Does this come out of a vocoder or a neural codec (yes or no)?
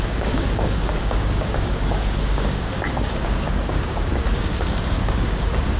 yes